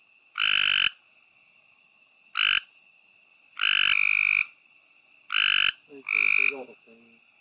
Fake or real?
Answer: real